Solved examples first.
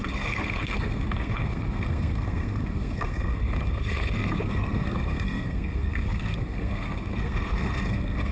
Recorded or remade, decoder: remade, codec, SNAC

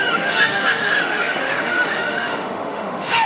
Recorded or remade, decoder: remade, autoencoder, DAC-VAE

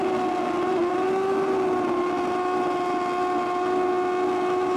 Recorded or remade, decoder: recorded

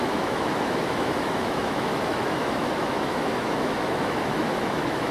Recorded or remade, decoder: remade, autoencoder, DAC-VAE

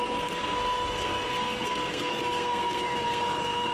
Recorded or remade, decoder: remade, codec, SNAC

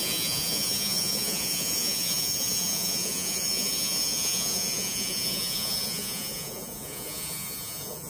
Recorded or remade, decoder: remade, vocoder, Vocos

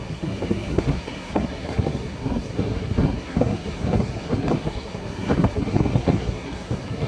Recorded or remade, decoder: remade, codec, SNAC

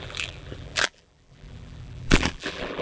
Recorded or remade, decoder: remade, vocoder, BigVGAN v2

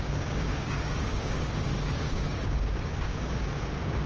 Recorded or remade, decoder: remade, codec, DAC